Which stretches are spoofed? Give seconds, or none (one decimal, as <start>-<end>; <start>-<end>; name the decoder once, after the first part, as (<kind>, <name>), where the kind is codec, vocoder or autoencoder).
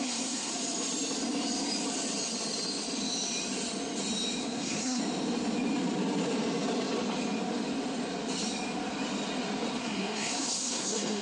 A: 0.0-0.5 (codec, SNAC); 4.4-5.0; 9.8-11.2